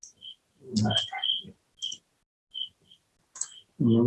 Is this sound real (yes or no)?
yes